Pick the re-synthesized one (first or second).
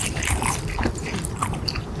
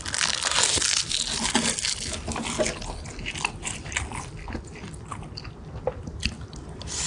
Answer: first